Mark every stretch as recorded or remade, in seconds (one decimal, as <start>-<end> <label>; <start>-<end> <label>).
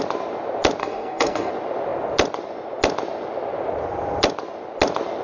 0.0-0.8 recorded; 0.8-1.5 remade; 1.5-5.2 recorded